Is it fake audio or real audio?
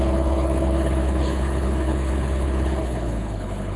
fake